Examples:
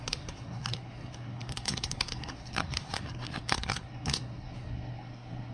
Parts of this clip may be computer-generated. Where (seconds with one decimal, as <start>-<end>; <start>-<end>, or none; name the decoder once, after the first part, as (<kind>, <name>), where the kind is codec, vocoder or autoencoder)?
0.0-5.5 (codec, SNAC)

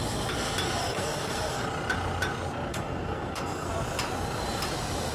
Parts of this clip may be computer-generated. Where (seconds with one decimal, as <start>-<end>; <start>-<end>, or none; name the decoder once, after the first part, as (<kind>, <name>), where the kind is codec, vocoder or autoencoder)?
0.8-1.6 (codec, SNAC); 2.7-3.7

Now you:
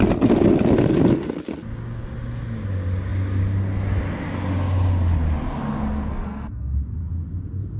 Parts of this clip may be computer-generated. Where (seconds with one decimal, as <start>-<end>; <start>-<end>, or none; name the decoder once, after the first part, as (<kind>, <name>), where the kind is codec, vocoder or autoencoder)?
6.1-6.7 (codec, SNAC)

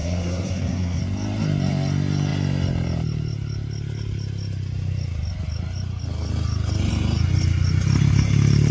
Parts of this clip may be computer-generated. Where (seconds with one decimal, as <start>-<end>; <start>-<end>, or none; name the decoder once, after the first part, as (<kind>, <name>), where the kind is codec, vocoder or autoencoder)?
0.0-1.0 (codec, SNAC)

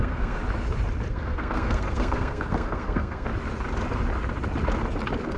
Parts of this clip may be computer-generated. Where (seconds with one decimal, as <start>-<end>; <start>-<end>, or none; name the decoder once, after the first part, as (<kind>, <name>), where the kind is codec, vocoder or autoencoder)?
0.0-0.4 (codec, SNAC); 1.1-3.3